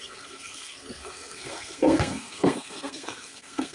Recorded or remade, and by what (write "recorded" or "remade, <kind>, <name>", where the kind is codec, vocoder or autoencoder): remade, codec, SNAC